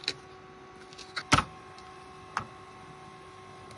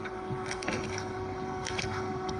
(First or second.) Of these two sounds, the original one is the first